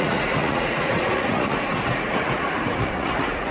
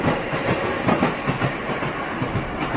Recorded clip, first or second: second